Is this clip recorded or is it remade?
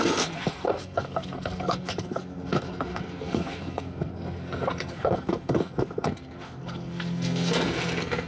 remade